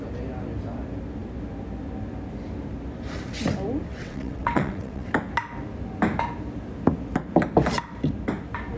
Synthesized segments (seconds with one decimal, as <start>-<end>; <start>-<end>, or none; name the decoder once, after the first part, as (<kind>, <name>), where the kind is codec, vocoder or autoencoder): 3.9-5.1 (vocoder, WaveNeXt)

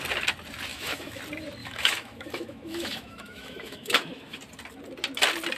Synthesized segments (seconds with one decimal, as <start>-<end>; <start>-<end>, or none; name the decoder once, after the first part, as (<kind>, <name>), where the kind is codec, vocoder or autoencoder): 0.7-1.2 (autoencoder, DAC-VAE); 1.6-4.4

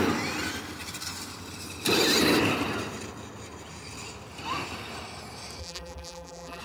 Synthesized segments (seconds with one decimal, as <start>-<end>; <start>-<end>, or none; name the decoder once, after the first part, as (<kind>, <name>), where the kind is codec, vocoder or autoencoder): 5.6-6.6 (vocoder, BigVGAN v2)

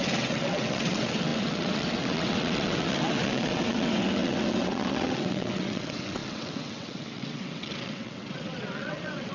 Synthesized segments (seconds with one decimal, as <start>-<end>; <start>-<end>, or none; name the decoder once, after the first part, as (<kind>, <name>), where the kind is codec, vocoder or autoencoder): 0.0-9.3 (vocoder, WaveNeXt)

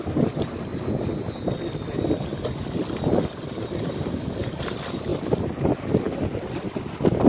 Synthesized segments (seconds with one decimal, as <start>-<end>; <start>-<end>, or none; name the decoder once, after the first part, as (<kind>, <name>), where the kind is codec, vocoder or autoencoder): none

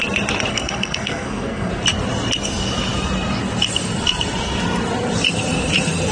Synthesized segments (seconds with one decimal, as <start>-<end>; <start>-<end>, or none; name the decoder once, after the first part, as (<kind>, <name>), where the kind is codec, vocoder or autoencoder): 0.5-1.7 (codec, SNAC)